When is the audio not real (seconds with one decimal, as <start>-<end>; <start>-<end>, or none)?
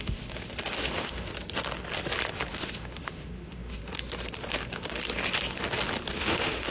0.0-1.3; 2.5-3.8; 6.1-6.7